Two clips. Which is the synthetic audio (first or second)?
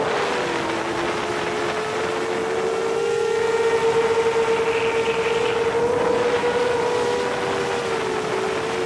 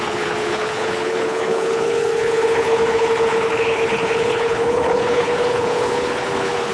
second